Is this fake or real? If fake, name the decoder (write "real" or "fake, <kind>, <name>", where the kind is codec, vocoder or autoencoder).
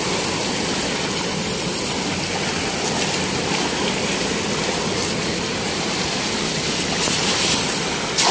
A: real